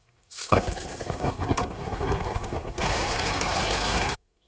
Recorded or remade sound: remade